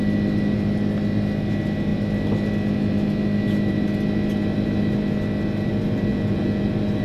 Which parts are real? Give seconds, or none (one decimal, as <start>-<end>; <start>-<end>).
0.0-6.1; 6.6-7.0